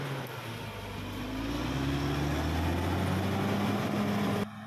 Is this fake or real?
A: real